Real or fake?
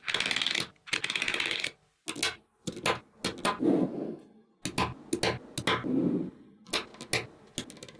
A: real